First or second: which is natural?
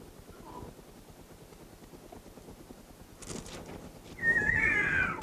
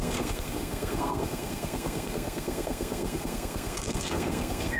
first